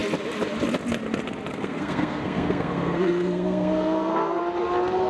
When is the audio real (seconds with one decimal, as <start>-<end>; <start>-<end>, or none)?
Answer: 0.0-1.5; 4.4-5.1